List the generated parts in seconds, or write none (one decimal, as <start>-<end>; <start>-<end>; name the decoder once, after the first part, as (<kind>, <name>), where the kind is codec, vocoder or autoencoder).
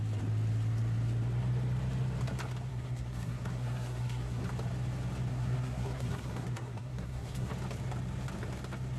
2.7-4.4 (codec, SNAC); 5.3-7.5